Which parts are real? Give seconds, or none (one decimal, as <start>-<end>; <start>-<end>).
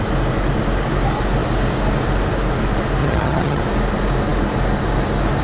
0.0-3.0; 3.6-5.4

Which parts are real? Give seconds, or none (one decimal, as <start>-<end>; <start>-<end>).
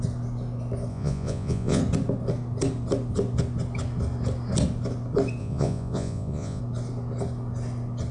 0.0-0.9; 1.8-5.4; 6.6-8.1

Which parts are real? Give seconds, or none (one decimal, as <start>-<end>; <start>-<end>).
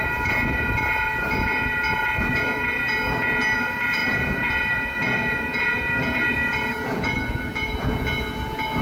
none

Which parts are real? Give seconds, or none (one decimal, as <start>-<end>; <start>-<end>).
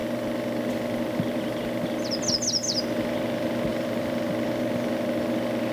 0.0-3.7; 4.6-5.7